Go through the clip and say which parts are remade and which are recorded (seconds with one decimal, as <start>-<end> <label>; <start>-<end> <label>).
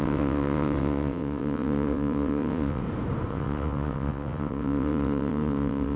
0.0-2.8 remade; 2.8-3.3 recorded; 3.3-6.0 remade